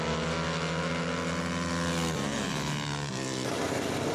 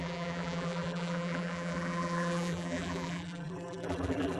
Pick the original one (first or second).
first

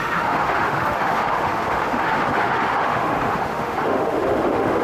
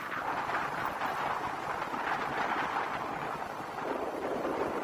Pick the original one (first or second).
second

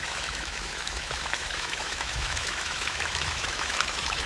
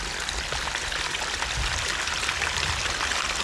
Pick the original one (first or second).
second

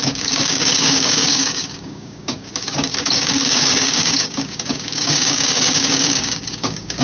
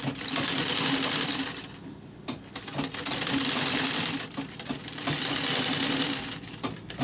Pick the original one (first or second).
second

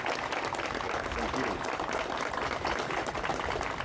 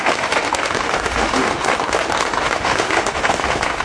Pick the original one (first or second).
first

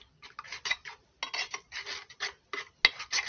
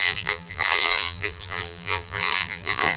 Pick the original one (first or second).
first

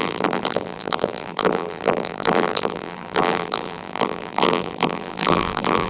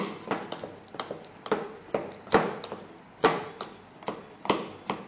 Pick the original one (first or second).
second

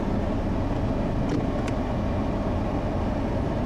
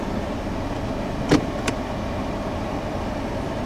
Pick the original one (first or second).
first